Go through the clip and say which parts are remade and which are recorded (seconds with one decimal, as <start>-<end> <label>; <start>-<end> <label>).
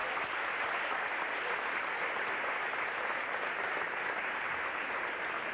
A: 0.0-5.5 recorded